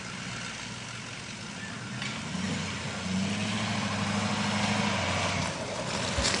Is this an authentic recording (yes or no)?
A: yes